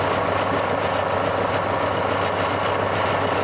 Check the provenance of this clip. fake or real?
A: real